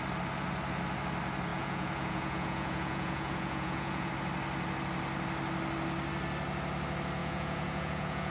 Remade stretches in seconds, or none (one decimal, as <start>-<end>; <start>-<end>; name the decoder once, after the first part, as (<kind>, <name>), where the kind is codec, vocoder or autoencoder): 1.5-4.1 (vocoder, Vocos); 7.2-8.3